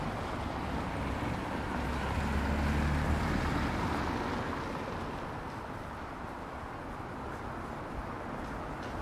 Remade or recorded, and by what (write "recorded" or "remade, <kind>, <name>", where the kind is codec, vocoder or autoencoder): recorded